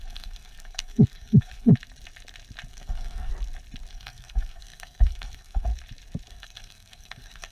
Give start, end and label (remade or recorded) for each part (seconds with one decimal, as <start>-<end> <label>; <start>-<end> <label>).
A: 0.0-1.7 remade; 1.7-2.7 recorded; 2.7-3.3 remade; 3.3-3.9 recorded; 3.9-5.7 remade; 5.7-6.3 recorded; 6.3-7.5 remade